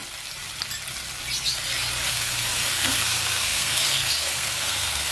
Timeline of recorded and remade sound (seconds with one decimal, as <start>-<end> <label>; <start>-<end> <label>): 0.0-2.1 recorded; 2.1-5.1 remade